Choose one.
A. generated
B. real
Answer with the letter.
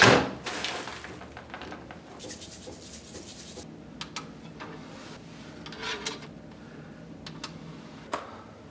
B